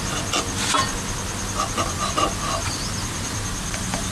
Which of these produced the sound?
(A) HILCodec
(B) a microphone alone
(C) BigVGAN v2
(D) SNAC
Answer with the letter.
B